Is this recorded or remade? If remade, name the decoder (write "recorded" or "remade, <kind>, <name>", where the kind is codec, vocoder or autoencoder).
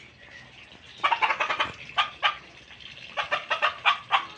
recorded